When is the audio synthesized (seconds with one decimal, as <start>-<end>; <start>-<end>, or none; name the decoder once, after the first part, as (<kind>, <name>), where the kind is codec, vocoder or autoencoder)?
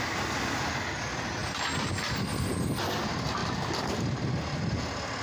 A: none